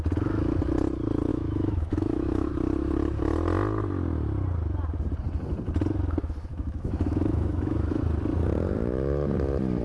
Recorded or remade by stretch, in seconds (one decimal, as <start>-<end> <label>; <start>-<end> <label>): 0.0-1.3 recorded; 1.3-2.5 remade; 2.5-6.5 recorded; 6.5-8.0 remade; 8.0-9.8 recorded